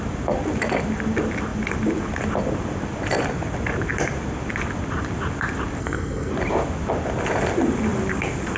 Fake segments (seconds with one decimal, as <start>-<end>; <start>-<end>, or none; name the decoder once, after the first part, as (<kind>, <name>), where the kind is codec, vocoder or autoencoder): 5.8-6.3 (codec, SNAC)